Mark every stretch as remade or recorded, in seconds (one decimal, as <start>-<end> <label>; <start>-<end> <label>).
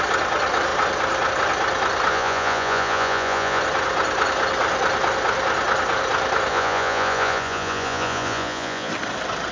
0.0-2.1 recorded; 2.1-3.6 remade; 3.6-6.5 recorded; 6.5-8.9 remade; 8.9-9.5 recorded